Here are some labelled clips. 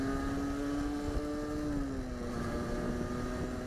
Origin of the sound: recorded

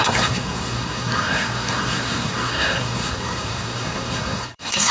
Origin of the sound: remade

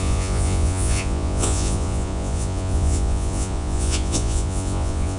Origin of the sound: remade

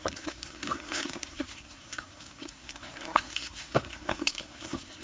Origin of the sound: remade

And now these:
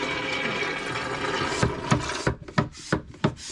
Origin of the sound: recorded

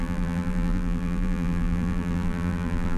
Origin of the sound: remade